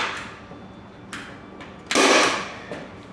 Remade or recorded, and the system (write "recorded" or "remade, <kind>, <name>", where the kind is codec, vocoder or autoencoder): recorded